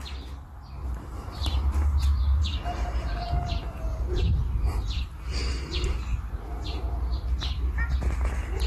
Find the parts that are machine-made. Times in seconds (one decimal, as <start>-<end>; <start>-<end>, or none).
0.8-5.5